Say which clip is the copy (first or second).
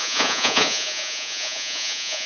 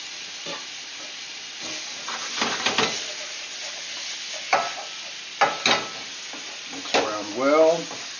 first